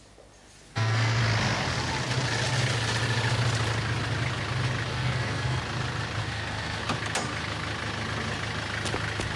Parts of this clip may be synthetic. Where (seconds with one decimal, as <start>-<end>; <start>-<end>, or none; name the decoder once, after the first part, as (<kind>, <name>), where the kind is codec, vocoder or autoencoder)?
0.7-1.2 (codec, SNAC); 4.9-5.6; 6.2-6.8